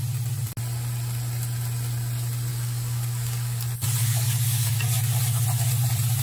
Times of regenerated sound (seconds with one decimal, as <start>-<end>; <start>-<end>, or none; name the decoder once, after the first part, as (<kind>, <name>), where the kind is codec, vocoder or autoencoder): 2.5-3.6 (codec, DAC); 4.0-4.7